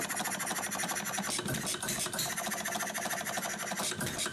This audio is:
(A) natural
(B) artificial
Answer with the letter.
A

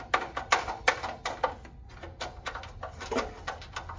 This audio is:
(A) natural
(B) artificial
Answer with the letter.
A